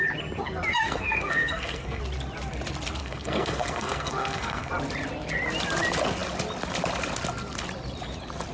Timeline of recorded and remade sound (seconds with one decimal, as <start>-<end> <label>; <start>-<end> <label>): 0.0-0.7 recorded; 0.7-2.0 remade; 2.0-3.0 recorded; 3.0-4.7 remade; 4.7-8.5 recorded